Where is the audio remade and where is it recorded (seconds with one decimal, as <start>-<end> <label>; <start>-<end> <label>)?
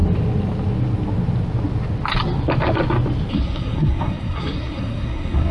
0.0-3.3 recorded; 3.3-5.5 remade